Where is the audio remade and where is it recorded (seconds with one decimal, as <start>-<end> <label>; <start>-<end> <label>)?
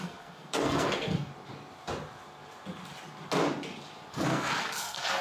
0.0-1.3 remade; 1.3-4.1 recorded; 4.1-5.2 remade